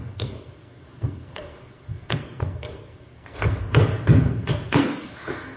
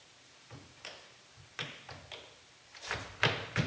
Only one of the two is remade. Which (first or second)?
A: first